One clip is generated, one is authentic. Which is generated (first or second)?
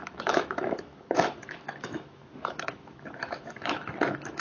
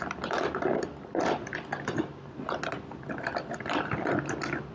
first